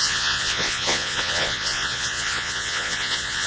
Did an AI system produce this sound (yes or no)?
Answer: yes